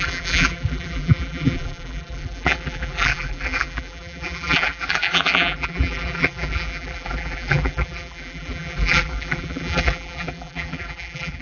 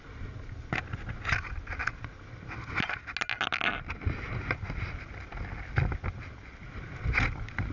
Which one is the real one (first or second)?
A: second